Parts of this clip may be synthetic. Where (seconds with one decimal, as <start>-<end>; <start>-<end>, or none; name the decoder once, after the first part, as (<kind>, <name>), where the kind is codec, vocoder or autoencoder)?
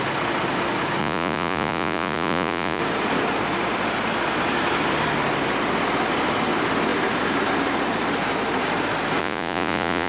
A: 1.0-2.8 (vocoder, Vocos); 9.2-10.1